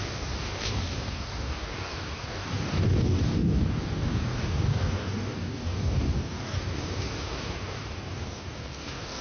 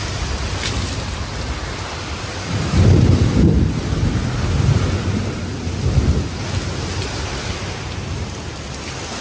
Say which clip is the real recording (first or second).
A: second